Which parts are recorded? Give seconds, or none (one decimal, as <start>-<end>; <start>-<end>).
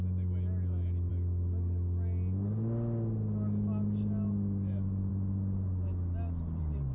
0.0-6.9